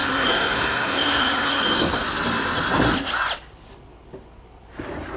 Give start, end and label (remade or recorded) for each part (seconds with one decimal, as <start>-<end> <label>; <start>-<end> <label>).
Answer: 0.0-1.9 remade; 1.9-5.2 recorded

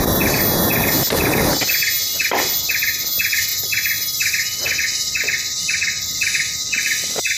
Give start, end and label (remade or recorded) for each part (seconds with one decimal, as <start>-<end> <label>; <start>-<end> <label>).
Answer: 0.0-7.4 recorded

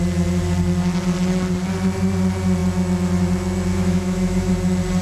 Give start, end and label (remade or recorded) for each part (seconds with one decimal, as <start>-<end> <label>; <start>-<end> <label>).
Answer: 0.0-3.7 recorded; 3.7-4.5 remade; 4.5-5.0 recorded

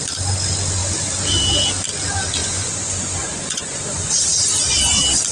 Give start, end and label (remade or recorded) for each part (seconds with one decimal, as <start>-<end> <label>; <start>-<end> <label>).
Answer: 0.0-2.4 recorded; 2.4-4.1 remade; 4.1-5.3 recorded

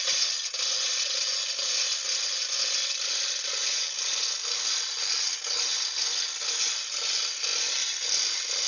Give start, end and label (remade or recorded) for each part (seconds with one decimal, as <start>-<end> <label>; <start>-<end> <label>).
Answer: 0.0-8.7 recorded

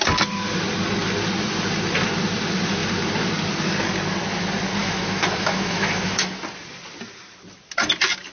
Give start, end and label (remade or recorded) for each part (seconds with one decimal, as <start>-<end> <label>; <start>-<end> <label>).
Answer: 0.0-4.8 recorded; 4.8-6.4 remade; 6.4-8.3 recorded